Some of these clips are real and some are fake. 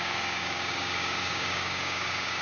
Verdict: fake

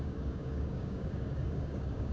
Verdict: fake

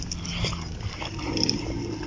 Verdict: real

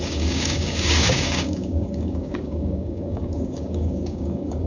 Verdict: fake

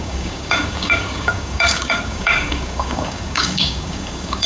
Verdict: fake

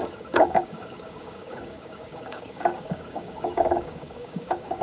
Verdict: fake